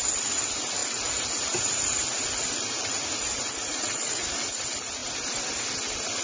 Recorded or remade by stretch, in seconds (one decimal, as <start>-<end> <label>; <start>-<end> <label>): 0.0-3.6 recorded; 3.6-4.6 remade; 4.6-6.2 recorded